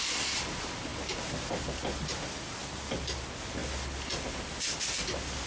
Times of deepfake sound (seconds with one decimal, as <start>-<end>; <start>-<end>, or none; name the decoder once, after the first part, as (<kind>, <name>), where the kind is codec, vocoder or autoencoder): none